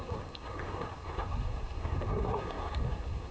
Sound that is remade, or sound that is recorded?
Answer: remade